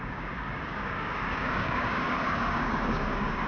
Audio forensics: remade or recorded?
remade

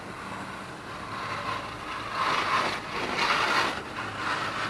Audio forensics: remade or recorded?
recorded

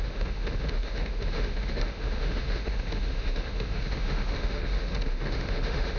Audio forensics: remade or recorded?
remade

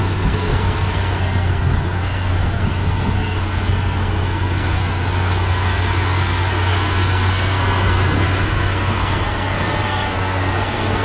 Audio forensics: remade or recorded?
remade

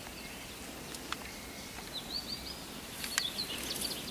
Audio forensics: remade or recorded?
recorded